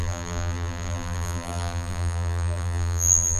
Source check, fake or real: fake